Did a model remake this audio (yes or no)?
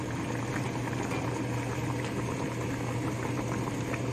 no